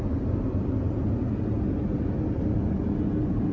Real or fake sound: real